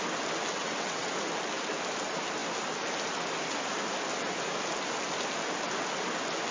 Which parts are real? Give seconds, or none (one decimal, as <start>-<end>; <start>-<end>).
0.0-0.6; 1.1-6.5